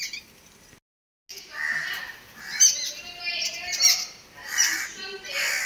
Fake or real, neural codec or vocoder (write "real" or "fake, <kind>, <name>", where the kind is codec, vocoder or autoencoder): real